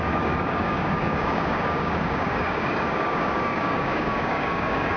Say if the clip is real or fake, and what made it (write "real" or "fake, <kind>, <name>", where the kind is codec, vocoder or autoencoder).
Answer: fake, codec, DAC